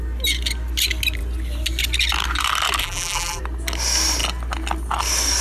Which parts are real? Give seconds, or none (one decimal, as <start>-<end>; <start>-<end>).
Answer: 0.0-2.8; 3.4-5.4